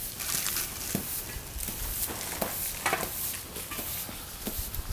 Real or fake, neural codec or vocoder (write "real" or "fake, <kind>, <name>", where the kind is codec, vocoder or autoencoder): real